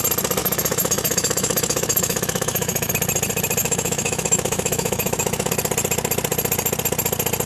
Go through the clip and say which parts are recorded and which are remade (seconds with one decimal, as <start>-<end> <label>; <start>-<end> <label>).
0.0-0.4 recorded; 0.4-2.9 remade; 2.9-3.6 recorded; 3.6-5.5 remade; 5.5-7.5 recorded